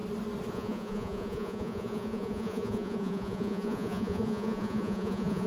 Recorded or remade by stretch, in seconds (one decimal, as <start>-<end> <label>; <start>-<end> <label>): 0.0-0.5 recorded; 0.5-5.5 remade